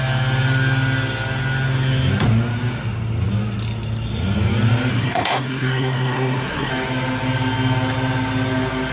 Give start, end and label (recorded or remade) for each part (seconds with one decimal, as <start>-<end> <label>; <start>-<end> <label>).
0.0-4.9 recorded; 4.9-6.7 remade; 6.7-8.9 recorded